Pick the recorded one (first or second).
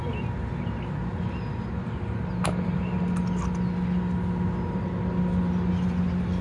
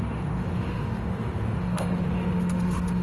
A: first